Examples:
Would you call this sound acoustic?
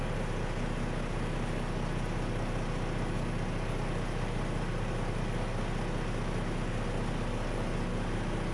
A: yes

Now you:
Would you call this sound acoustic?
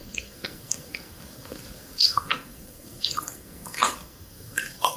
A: no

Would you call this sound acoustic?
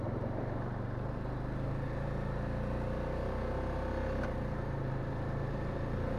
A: yes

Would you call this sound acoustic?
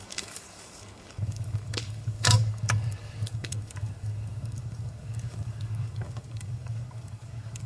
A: no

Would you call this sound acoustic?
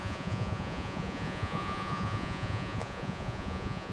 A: no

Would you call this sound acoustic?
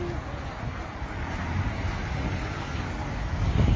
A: yes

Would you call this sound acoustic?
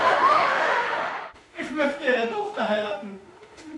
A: no